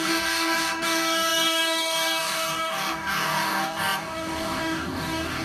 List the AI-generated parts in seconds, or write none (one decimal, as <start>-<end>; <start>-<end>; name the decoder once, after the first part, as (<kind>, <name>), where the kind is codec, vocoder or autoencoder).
0.0-5.4 (codec, DAC)